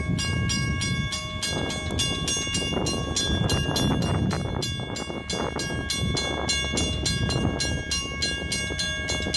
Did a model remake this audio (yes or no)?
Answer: no